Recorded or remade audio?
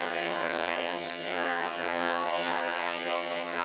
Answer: remade